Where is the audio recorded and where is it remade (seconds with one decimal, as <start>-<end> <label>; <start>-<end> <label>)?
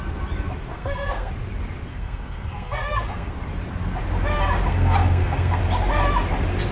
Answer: 0.0-0.7 recorded; 0.7-1.3 remade; 1.3-1.9 recorded; 1.9-3.3 remade; 3.3-4.7 recorded; 4.7-5.6 remade; 5.6-6.7 recorded